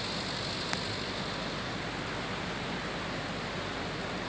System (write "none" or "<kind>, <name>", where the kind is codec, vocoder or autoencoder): none